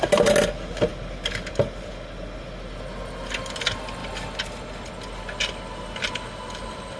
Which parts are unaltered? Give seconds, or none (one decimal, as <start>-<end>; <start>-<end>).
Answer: 0.0-7.0